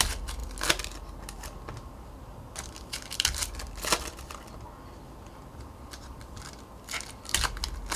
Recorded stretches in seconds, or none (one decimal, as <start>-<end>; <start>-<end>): 0.0-8.0